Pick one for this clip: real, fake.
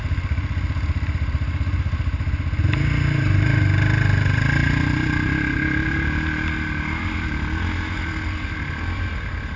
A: real